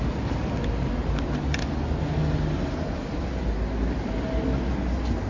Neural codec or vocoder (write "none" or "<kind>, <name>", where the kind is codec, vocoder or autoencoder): none